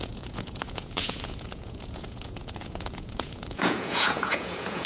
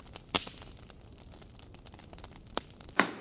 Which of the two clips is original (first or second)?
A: second